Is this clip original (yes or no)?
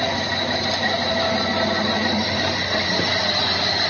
yes